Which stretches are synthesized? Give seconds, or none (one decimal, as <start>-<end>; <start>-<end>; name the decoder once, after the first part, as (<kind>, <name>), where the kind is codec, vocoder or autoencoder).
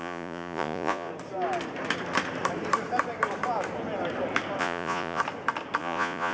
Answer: 0.0-1.1 (vocoder, Vocos); 4.6-5.2; 5.8-6.3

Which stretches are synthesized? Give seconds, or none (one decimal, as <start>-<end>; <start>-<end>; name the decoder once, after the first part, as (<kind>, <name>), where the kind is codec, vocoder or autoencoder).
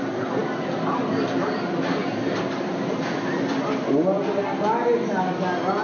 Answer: none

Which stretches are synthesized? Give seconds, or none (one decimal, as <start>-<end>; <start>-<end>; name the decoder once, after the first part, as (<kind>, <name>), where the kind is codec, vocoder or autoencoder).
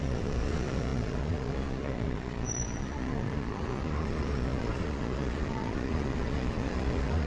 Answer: 0.0-7.3 (vocoder, Vocos)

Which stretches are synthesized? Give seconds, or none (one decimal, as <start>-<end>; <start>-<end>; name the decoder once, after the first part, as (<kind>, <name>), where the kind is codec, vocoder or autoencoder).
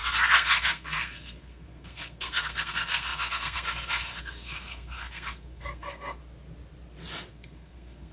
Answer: 0.0-6.2 (codec, SNAC); 7.3-8.1